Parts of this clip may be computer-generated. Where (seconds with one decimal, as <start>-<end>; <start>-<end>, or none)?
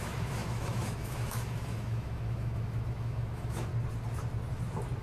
0.0-3.7